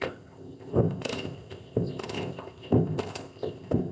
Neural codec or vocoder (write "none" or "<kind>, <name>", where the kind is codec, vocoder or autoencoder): codec, ZipCodec